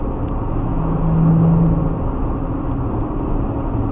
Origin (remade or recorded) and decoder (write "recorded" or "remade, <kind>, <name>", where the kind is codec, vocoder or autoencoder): recorded